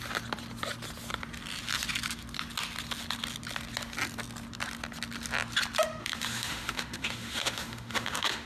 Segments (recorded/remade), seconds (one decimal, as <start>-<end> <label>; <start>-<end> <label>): 0.0-6.0 recorded; 6.0-8.5 remade